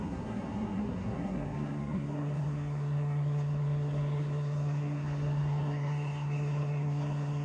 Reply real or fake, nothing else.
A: fake